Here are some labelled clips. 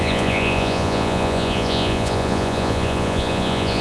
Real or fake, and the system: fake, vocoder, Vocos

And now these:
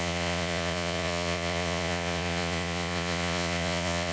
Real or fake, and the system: fake, vocoder, Vocos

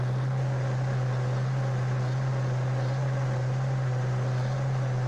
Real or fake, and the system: real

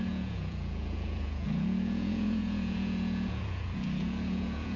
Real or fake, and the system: fake, vocoder, Vocos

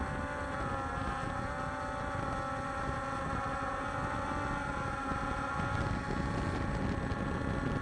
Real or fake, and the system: real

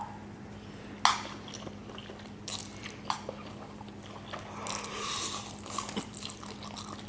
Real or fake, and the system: real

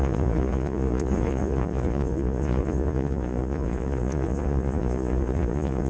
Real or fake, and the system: fake, vocoder, Vocos